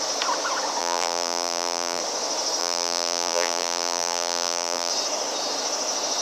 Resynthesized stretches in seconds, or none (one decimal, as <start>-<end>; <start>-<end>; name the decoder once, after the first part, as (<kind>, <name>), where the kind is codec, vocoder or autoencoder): 0.8-2.0 (vocoder, BigVGAN v2); 2.6-4.9